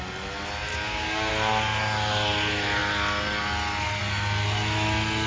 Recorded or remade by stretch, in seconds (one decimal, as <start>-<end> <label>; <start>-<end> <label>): 0.0-0.7 recorded; 0.7-1.3 remade; 1.3-5.3 recorded